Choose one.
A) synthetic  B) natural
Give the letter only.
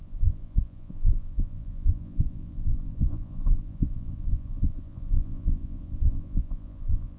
A